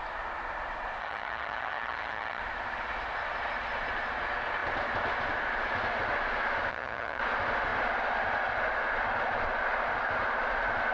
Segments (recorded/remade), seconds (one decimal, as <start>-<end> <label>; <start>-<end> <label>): 0.0-1.0 recorded; 1.0-2.4 remade; 2.4-6.7 recorded; 6.7-7.2 remade; 7.2-10.9 recorded

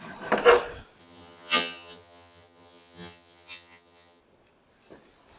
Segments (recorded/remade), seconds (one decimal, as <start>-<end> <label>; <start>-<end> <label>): 0.0-1.0 recorded; 1.0-4.2 remade; 4.2-5.4 recorded

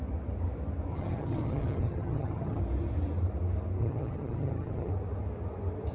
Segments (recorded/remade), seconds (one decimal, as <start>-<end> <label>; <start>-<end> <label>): 0.0-0.9 recorded; 0.9-2.6 remade; 2.6-3.8 recorded; 3.8-4.9 remade; 4.9-5.9 recorded

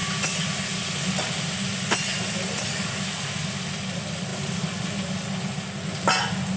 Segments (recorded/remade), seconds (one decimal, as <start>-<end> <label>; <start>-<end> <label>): 0.0-6.6 recorded